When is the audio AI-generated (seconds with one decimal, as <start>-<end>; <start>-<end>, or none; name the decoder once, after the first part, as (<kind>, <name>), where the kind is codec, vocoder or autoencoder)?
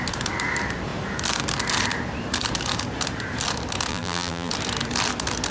3.9-4.5 (vocoder, BigVGAN v2)